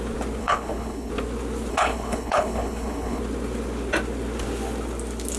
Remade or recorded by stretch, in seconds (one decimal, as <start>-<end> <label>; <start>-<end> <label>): 0.0-0.4 recorded; 0.4-1.1 remade; 1.1-1.7 recorded; 1.7-3.2 remade; 3.2-5.4 recorded